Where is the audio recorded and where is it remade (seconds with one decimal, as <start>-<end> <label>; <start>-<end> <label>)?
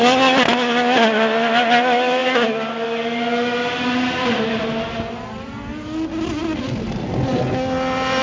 0.0-8.2 recorded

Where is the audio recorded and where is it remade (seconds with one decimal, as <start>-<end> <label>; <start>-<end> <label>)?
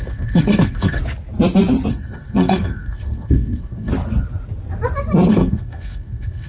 0.0-1.0 remade; 1.0-1.9 recorded; 1.9-3.9 remade; 3.9-5.3 recorded; 5.3-6.5 remade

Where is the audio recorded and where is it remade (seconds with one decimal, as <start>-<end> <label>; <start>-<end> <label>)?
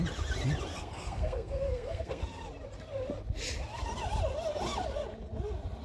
0.0-0.7 recorded; 0.7-2.2 remade; 2.2-5.8 recorded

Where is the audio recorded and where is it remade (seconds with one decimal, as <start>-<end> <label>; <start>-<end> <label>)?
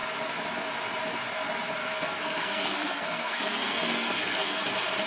0.0-1.8 recorded; 1.8-4.6 remade; 4.6-5.1 recorded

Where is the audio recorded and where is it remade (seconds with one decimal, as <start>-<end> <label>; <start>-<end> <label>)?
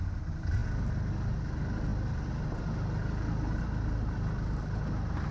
0.0-5.3 recorded